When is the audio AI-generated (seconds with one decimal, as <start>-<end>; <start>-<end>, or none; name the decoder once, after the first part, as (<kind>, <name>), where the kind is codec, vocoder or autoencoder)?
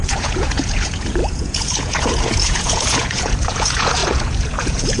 0.0-5.0 (vocoder, Vocos)